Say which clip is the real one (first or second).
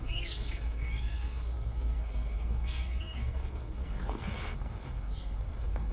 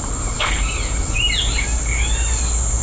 second